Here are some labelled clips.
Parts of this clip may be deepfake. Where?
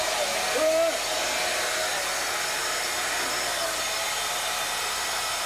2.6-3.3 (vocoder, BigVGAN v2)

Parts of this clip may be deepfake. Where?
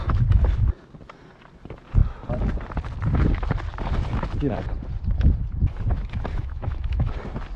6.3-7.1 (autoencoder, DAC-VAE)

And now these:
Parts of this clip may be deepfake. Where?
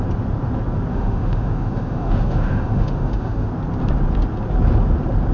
0.9-3.5 (autoencoder, DAC-VAE)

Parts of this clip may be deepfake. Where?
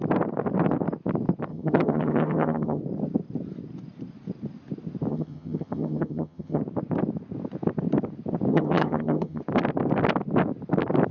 1.5-2.8 (vocoder, HiFi-GAN); 5.1-6.6; 8.5-9.4